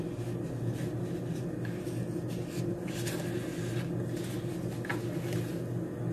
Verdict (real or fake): real